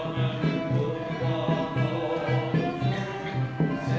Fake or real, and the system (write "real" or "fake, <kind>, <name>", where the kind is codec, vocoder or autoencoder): real